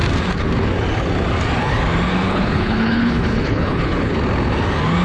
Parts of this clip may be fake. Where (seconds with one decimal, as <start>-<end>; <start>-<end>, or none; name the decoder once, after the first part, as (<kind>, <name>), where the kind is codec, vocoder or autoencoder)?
2.1-4.1 (codec, HILCodec)